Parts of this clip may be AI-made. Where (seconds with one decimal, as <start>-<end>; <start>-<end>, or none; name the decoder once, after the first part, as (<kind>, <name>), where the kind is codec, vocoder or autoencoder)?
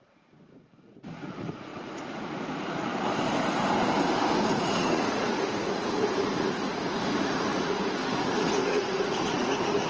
0.0-2.9 (vocoder, Vocos); 4.6-9.9